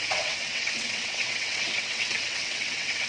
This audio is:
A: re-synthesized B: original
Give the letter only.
A